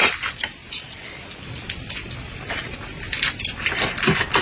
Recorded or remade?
recorded